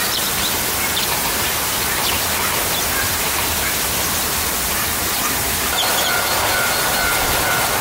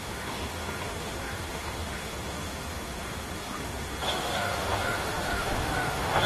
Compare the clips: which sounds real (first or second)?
first